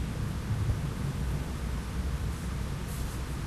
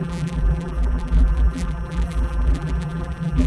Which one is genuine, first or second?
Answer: first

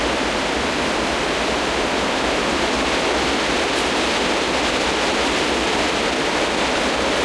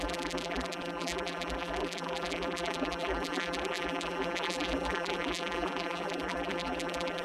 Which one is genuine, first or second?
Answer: first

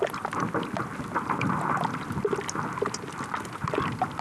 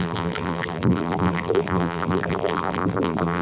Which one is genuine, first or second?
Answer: first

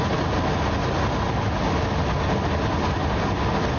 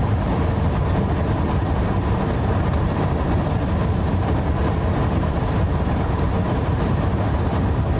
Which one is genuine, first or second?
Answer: first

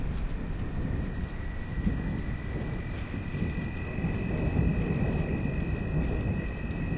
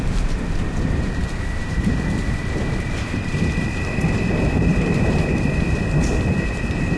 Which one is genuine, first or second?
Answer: first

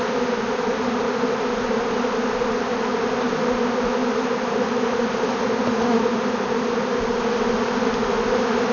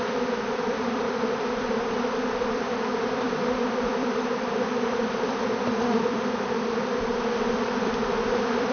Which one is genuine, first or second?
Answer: first